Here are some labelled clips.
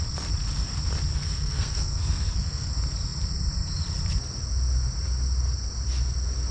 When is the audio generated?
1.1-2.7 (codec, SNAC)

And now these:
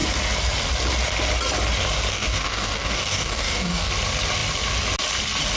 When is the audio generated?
2.1-3.9 (codec, DAC)

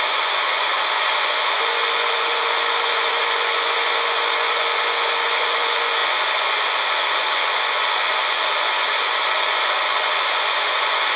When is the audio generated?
0.0-11.2 (vocoder, Vocos)

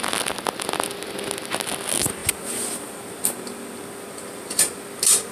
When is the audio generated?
none

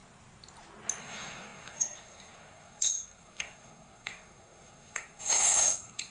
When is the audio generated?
1.0-6.1 (codec, SNAC)

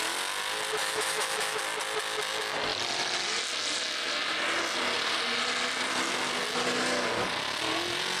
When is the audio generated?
0.8-1.6 (autoencoder, DAC-VAE)

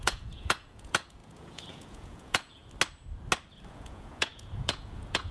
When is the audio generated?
0.0-2.6 (vocoder, Vocos); 3.7-5.3

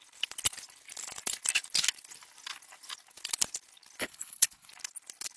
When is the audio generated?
4.0-4.7 (codec, HILCodec)